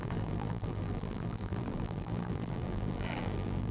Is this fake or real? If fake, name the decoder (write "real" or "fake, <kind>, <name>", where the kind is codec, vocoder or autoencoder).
fake, vocoder, BigVGAN v2